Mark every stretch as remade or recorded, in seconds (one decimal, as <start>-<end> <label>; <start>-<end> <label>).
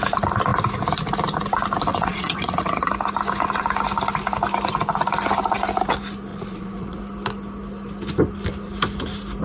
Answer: 0.0-1.9 recorded; 1.9-2.9 remade; 2.9-6.3 recorded; 6.3-7.0 remade; 7.0-9.4 recorded